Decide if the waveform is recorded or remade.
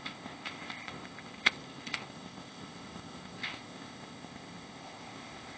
remade